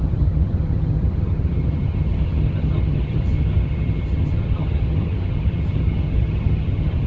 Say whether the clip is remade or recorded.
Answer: remade